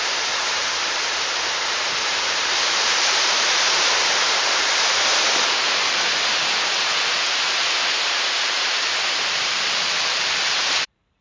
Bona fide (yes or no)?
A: no